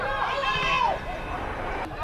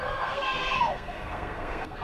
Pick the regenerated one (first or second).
second